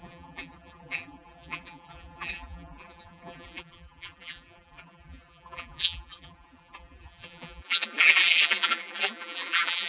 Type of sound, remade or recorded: remade